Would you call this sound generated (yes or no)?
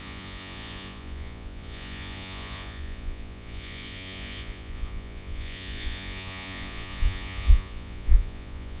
yes